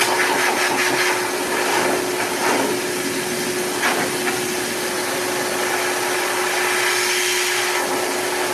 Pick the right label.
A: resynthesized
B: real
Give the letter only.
B